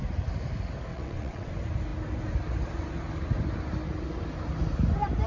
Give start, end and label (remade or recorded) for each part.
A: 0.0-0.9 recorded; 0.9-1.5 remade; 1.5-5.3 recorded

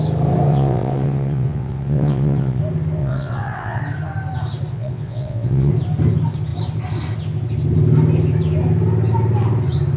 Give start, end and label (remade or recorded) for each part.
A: 0.0-0.5 recorded; 0.5-2.6 remade; 2.6-3.0 recorded; 3.0-3.8 remade; 3.8-4.7 recorded; 4.7-5.7 remade; 5.7-10.0 recorded

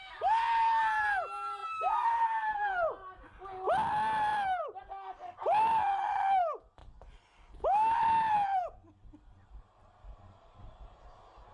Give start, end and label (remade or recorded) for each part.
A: 0.0-4.3 recorded; 4.3-4.8 remade; 4.8-11.5 recorded

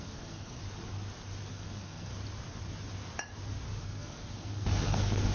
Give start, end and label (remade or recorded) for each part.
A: 0.0-0.6 remade; 0.6-1.5 recorded; 1.5-2.1 remade; 2.1-3.8 recorded; 3.8-5.3 remade

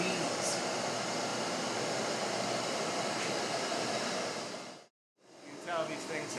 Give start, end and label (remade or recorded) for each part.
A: 0.0-1.3 recorded; 1.3-5.1 remade; 5.1-6.4 recorded

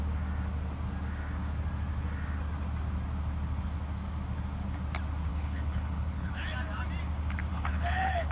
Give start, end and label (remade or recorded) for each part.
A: 0.0-5.3 recorded; 5.3-6.3 remade; 6.3-7.5 recorded; 7.5-8.3 remade

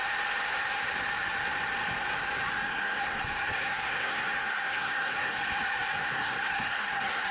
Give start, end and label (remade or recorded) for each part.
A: 0.0-2.7 recorded; 2.7-5.4 remade; 5.4-6.0 recorded; 6.0-7.3 remade

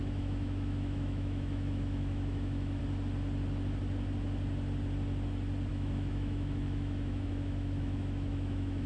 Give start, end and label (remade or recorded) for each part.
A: 0.0-2.8 remade; 2.8-5.7 recorded; 5.7-8.9 remade